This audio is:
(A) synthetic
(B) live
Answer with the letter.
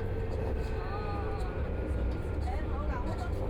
B